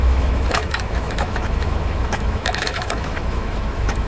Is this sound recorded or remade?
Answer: remade